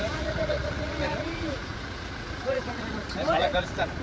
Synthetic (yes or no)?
yes